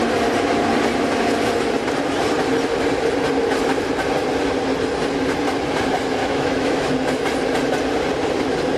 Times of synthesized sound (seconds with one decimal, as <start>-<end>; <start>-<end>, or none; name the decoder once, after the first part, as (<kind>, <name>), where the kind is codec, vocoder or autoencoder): 6.2-6.9 (autoencoder, DAC-VAE)